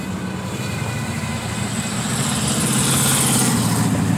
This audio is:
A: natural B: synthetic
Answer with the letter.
A